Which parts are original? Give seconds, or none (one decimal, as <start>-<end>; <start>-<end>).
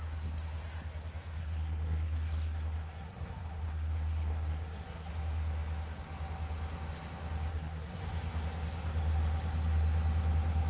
0.0-1.4; 5.1-7.5; 8.0-10.7